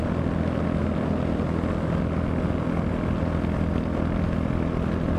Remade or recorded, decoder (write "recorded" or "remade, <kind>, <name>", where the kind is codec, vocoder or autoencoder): recorded